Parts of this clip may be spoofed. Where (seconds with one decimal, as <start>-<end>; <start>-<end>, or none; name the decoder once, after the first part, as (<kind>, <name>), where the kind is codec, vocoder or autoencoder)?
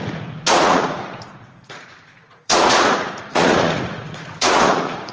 0.0-5.1 (vocoder, Vocos)